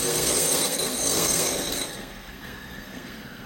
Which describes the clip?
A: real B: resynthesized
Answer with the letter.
B